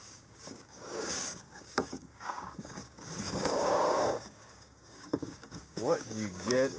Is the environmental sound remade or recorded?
remade